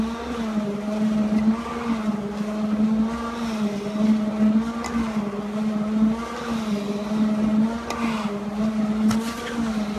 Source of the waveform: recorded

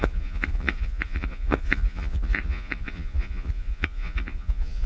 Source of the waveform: remade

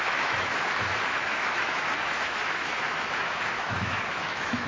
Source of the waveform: remade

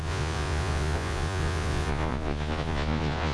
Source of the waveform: remade